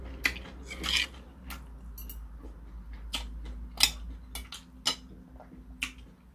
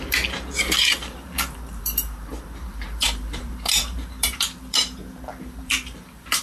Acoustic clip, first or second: first